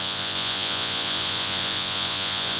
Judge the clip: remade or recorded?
remade